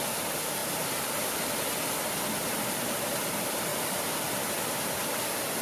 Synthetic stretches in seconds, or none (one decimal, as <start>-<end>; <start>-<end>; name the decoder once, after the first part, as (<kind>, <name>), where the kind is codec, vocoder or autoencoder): 3.7-5.6 (vocoder, BigVGAN v2)